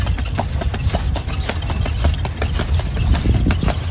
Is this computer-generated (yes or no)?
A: no